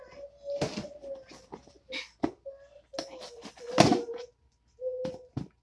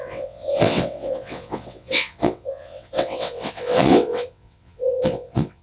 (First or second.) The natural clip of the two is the first